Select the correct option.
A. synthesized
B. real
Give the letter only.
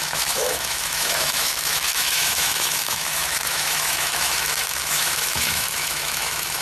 A